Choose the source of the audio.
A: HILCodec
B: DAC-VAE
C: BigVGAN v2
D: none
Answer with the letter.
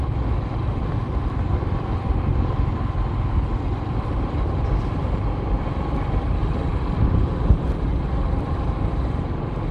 C